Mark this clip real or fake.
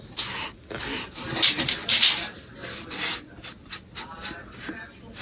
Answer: real